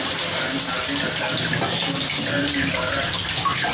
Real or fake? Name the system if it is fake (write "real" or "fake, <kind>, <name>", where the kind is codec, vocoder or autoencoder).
real